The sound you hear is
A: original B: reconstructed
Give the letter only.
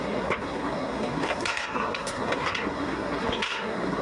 B